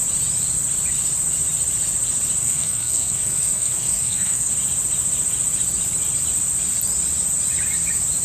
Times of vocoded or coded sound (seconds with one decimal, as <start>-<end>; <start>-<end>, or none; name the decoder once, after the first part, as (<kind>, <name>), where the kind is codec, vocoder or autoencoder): 2.4-4.5 (codec, SNAC)